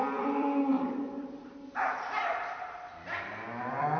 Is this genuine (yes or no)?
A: no